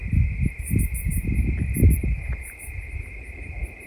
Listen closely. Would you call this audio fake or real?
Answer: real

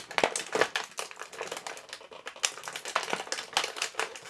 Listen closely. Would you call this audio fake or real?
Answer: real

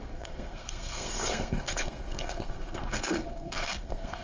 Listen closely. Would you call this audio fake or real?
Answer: fake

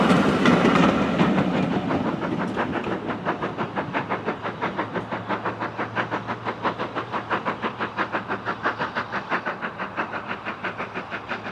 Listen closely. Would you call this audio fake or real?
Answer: real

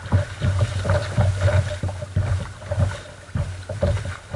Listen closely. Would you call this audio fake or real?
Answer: real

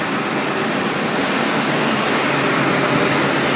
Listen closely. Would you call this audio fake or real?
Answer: real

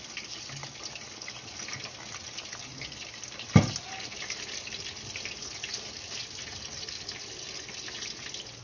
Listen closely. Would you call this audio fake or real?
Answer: real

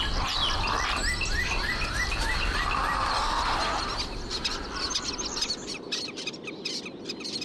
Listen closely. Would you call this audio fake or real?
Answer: real